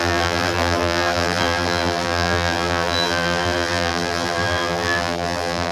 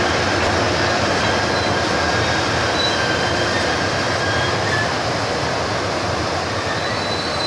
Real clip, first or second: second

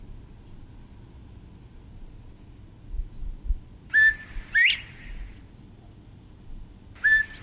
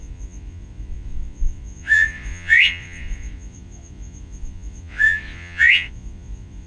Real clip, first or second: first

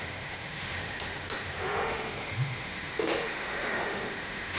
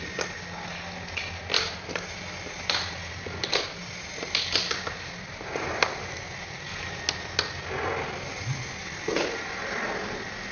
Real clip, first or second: second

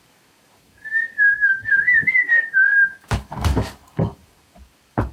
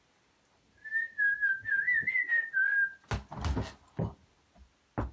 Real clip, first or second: second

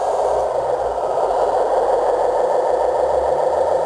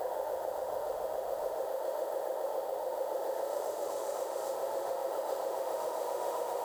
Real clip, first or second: first